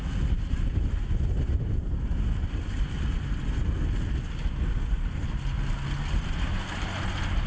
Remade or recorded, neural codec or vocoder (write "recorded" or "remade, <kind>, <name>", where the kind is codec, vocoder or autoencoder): recorded